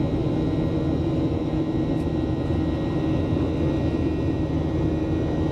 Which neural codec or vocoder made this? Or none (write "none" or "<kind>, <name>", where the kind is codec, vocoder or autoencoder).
none